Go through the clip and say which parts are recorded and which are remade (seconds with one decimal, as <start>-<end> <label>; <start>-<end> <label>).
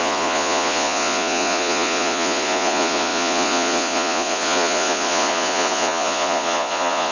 0.0-7.1 remade